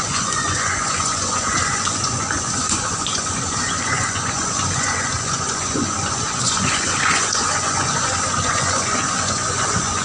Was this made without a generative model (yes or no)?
no